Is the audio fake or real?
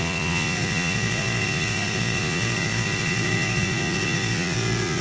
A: fake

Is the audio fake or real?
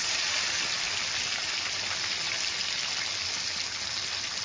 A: real